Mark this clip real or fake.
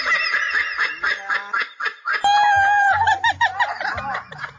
real